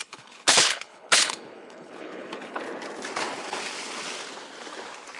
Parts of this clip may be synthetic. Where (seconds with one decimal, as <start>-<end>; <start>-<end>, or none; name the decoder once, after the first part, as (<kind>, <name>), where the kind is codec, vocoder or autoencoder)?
0.0-2.6 (codec, HILCodec)

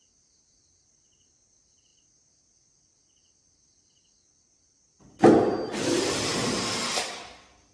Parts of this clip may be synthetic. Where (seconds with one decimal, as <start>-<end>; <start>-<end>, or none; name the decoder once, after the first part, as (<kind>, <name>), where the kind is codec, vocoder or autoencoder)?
none

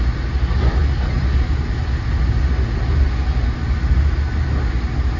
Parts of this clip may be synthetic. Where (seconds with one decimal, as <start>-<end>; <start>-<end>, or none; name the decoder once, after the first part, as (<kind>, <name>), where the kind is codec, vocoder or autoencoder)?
none

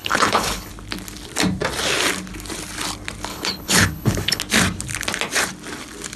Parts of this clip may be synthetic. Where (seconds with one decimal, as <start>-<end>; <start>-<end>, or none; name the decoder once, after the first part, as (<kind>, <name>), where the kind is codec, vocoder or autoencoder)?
0.0-0.7 (codec, HILCodec); 3.3-4.4